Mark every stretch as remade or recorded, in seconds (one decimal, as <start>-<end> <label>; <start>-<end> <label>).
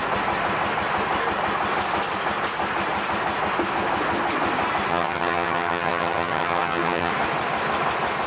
0.0-4.9 recorded; 4.9-7.1 remade; 7.1-8.3 recorded